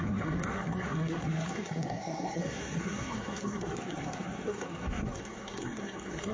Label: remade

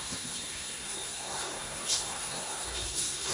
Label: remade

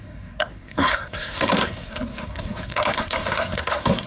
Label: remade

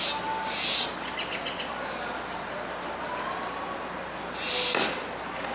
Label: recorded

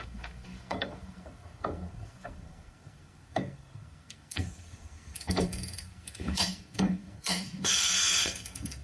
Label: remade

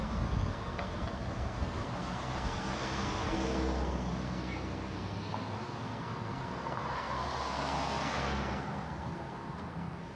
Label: remade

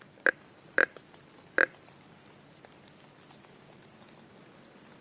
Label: recorded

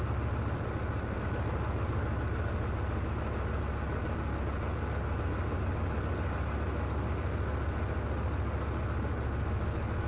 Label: recorded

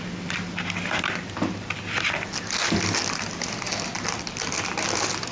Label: recorded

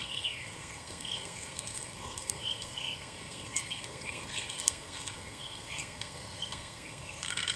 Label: remade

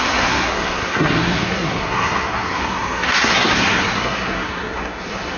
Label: remade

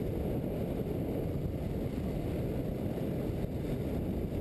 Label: recorded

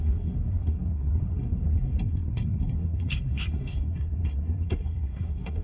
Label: remade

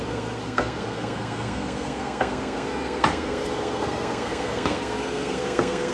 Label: remade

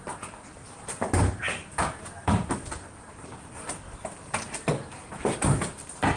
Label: recorded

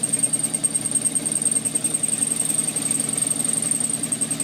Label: recorded